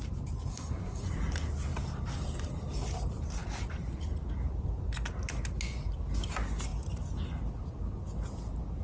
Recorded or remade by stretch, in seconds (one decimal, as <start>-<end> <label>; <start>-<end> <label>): 0.0-0.5 recorded; 0.5-1.0 remade; 1.0-8.8 recorded